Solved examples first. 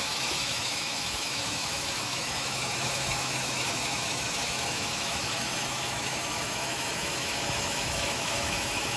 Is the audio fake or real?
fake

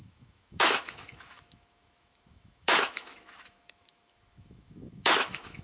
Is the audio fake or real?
fake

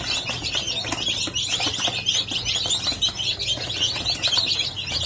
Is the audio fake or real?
real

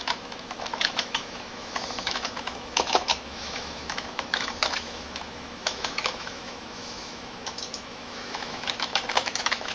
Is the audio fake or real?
fake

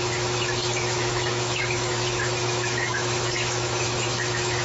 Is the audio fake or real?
fake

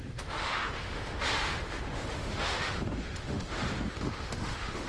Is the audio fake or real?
fake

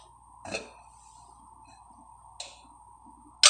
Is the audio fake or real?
real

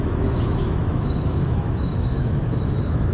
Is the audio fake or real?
fake